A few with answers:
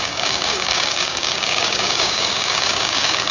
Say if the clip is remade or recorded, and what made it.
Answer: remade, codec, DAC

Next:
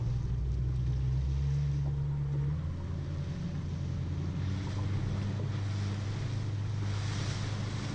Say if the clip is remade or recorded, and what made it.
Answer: recorded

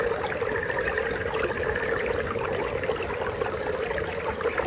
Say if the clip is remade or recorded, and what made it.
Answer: recorded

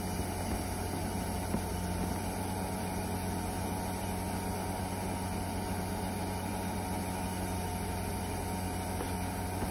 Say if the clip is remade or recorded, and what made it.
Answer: recorded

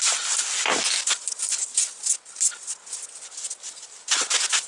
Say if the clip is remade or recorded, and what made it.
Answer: recorded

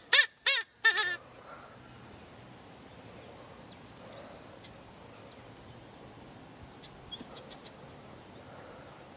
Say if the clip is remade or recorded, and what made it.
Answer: recorded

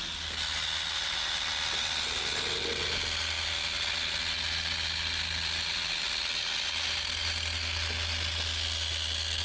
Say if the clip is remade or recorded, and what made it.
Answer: recorded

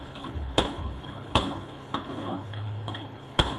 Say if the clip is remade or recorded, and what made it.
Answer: remade, codec, HILCodec